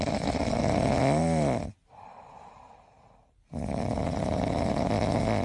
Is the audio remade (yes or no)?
no